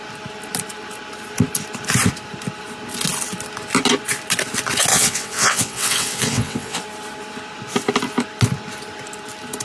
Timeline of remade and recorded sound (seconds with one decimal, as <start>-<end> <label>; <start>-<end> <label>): 0.0-4.9 recorded; 4.9-6.8 remade; 6.8-9.6 recorded